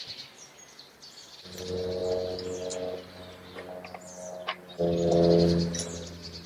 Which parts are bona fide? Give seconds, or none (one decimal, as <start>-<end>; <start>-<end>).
0.0-6.5